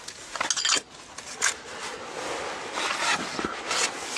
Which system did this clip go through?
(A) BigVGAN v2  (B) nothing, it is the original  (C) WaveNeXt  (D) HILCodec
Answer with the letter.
B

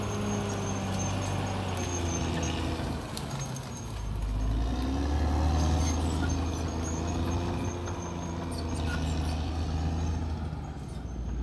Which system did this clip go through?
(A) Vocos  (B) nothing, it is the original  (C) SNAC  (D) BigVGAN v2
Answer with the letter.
B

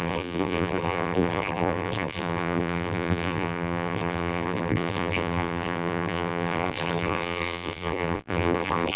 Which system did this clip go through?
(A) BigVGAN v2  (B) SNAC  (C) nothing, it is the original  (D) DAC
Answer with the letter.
A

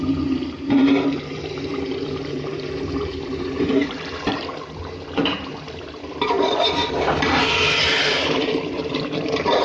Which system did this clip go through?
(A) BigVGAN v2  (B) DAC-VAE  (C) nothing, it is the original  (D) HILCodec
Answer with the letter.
A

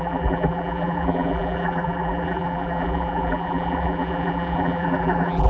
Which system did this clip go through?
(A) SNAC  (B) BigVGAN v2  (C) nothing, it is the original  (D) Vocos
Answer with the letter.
B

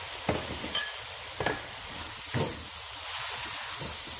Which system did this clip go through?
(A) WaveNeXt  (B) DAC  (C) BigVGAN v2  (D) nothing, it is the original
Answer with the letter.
D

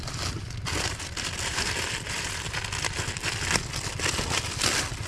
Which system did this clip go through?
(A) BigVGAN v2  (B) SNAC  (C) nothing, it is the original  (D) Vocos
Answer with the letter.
C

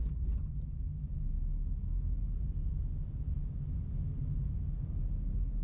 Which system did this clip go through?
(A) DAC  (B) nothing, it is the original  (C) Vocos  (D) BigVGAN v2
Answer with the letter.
B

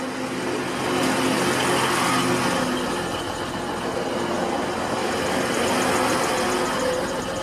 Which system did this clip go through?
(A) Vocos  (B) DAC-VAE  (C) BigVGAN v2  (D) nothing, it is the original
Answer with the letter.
D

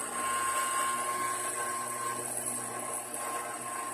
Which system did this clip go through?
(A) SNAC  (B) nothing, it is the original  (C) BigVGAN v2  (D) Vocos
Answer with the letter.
B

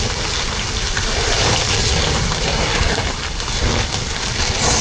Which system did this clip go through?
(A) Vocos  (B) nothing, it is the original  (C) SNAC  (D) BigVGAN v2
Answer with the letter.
B